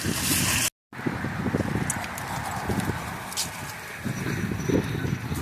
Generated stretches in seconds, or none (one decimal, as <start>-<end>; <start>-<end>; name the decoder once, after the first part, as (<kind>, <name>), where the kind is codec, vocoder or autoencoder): none